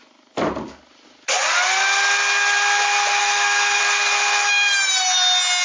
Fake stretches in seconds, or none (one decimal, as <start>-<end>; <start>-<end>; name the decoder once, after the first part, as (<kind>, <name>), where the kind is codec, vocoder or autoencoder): 3.2-3.8 (codec, SNAC)